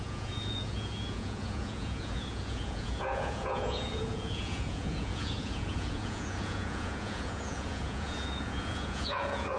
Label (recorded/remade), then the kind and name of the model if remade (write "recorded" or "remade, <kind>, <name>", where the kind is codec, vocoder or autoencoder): remade, vocoder, Vocos